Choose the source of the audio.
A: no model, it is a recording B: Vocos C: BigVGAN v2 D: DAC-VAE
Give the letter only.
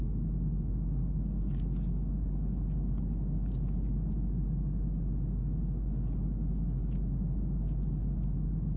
A